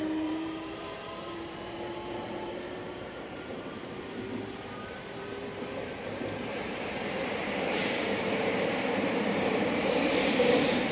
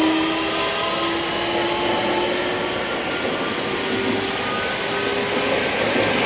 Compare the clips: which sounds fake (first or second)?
first